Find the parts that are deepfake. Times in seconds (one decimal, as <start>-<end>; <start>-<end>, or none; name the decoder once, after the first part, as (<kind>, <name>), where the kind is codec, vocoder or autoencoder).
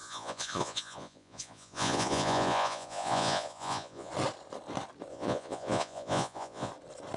0.0-4.1 (vocoder, Vocos); 5.1-6.7